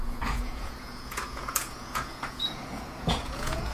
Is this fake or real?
fake